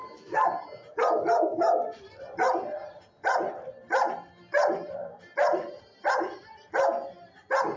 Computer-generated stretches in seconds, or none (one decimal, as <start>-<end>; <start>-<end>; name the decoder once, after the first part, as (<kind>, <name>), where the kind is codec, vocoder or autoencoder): 5.0-5.9 (vocoder, BigVGAN v2)